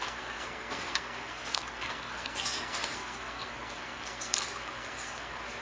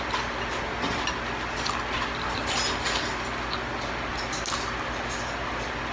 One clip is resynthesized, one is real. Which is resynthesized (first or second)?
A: first